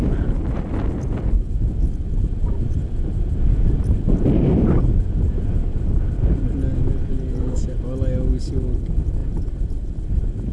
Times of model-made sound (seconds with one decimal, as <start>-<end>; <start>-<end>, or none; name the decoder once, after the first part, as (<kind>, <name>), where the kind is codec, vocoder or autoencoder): 4.8-5.5 (vocoder, Vocos)